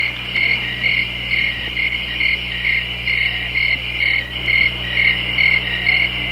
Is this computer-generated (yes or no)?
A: no